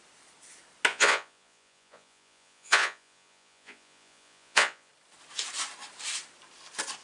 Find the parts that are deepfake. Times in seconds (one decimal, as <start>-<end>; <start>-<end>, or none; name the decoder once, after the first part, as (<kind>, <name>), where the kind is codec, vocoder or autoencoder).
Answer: 0.9-4.9 (vocoder, Vocos)